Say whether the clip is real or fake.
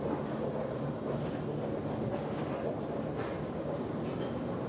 real